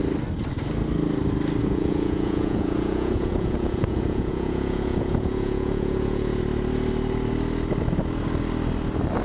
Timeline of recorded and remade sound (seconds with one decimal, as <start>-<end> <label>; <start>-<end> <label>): 0.0-1.6 recorded; 1.6-6.4 remade; 6.4-9.2 recorded